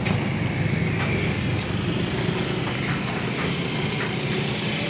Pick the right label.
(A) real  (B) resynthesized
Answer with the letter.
A